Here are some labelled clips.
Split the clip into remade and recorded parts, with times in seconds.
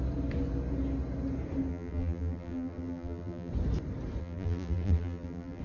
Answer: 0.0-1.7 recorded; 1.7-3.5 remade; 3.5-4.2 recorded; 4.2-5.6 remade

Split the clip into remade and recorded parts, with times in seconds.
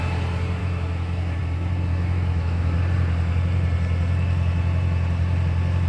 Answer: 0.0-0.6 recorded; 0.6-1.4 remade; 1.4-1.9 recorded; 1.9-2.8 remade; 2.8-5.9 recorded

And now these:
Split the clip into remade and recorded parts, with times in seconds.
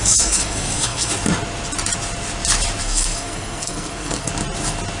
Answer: 0.0-1.1 remade; 1.1-2.8 recorded; 2.8-4.3 remade; 4.3-5.0 recorded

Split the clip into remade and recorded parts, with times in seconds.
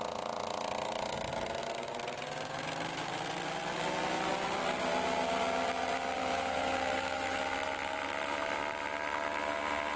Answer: 0.0-6.2 recorded; 6.2-7.4 remade; 7.4-10.0 recorded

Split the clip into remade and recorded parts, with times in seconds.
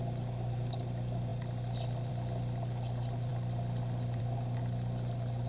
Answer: 0.0-5.5 recorded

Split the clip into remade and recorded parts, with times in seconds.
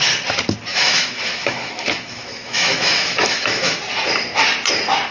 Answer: 0.0-0.7 recorded; 0.7-3.8 remade; 3.8-5.1 recorded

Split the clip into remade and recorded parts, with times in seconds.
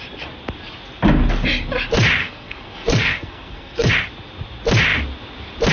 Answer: 0.0-2.2 recorded; 2.2-3.9 remade; 3.9-5.7 recorded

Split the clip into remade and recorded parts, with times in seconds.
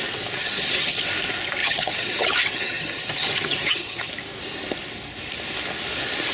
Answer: 0.0-0.4 recorded; 0.4-1.0 remade; 1.0-1.6 recorded; 1.6-4.1 remade; 4.1-6.3 recorded